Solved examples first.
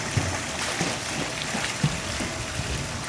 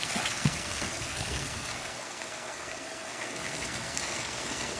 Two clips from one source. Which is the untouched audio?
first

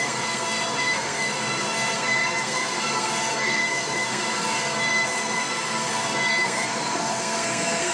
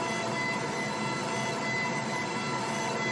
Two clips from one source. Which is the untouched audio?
second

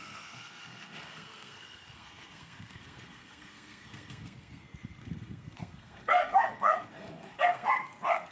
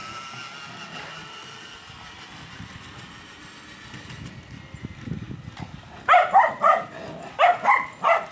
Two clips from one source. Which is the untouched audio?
second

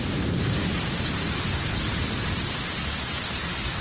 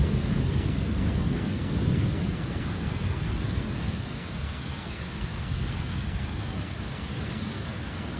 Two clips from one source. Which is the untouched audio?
first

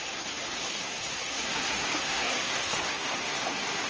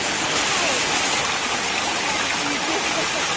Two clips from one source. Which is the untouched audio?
second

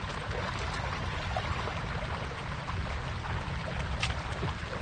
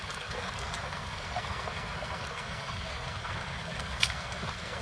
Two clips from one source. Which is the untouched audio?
first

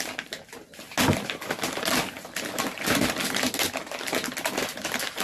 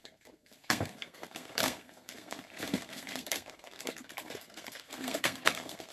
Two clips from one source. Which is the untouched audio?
first